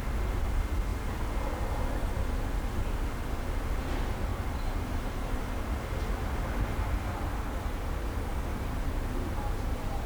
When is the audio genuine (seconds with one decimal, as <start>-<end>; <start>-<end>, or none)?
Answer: 0.0-4.3; 5.4-8.5